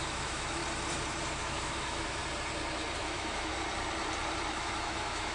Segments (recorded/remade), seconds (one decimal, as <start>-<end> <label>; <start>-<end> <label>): 0.0-0.6 remade; 0.6-1.4 recorded; 1.4-2.2 remade; 2.2-3.0 recorded; 3.0-3.5 remade; 3.5-4.5 recorded; 4.5-5.3 remade